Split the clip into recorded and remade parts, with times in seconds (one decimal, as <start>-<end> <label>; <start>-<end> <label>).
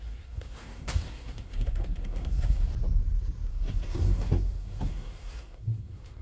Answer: 0.0-2.7 remade; 2.7-3.5 recorded; 3.5-6.2 remade